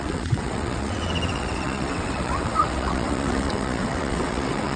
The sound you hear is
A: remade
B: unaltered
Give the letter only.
A